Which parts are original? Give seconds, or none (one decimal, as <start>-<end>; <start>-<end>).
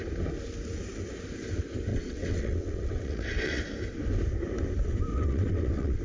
0.0-1.9; 3.6-5.1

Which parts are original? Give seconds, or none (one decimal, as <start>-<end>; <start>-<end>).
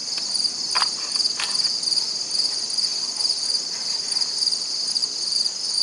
0.0-5.8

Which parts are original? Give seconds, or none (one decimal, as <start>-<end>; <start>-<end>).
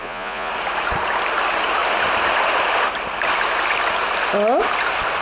0.5-5.2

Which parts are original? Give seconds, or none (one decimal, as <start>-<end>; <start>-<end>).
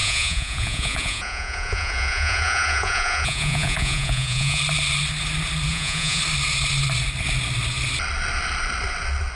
4.6-5.7; 6.2-9.4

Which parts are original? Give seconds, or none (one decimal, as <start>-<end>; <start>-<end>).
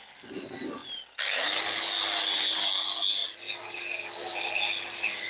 0.0-5.3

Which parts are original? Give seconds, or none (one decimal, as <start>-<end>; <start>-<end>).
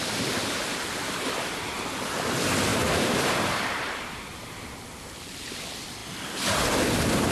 0.0-2.7; 4.8-7.3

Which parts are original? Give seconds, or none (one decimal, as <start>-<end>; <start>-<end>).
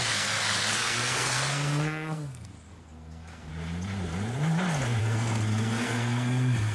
3.5-5.0